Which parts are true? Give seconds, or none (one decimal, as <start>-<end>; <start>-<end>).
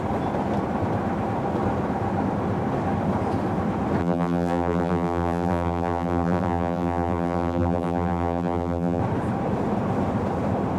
0.0-4.0; 9.0-10.8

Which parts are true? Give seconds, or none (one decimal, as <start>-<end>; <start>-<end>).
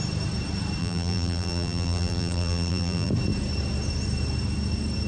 0.0-0.8; 3.1-5.1